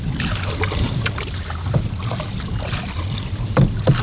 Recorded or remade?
recorded